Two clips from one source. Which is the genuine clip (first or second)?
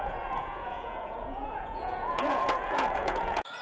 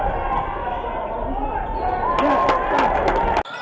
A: second